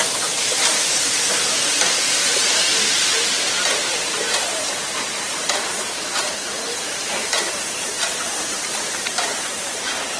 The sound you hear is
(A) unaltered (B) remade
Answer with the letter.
B